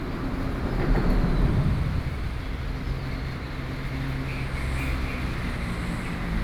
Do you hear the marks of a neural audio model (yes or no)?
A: no